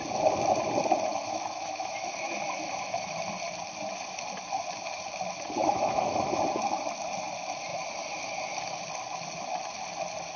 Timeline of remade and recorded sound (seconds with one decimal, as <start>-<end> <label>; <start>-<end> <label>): 0.0-1.1 recorded; 1.1-3.3 remade; 3.3-5.6 recorded; 5.6-6.4 remade; 6.4-10.4 recorded